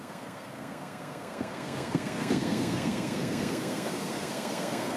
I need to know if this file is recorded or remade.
remade